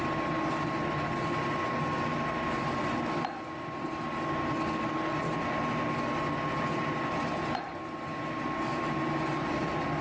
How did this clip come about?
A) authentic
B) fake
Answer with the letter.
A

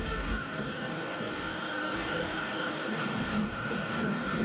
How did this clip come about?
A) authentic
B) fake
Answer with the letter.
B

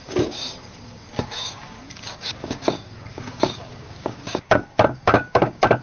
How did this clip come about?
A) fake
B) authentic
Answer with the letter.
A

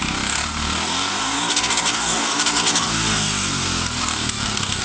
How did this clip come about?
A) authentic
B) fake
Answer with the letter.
B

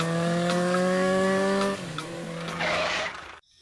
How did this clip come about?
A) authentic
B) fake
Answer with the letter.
B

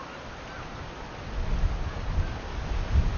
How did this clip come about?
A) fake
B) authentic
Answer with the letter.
B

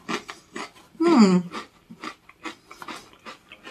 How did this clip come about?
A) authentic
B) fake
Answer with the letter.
A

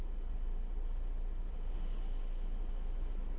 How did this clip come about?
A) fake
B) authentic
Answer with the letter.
B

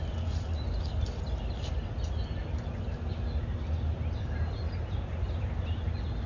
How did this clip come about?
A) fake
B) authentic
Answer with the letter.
B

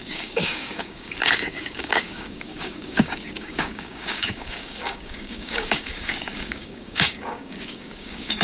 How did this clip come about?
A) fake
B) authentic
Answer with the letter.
A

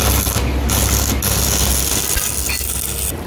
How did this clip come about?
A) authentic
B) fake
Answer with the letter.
A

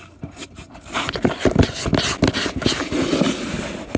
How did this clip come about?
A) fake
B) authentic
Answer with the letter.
B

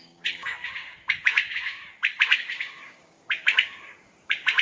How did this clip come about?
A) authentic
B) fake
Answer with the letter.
B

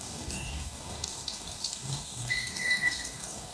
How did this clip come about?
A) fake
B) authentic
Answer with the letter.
A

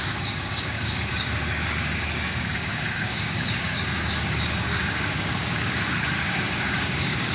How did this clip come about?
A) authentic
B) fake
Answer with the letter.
B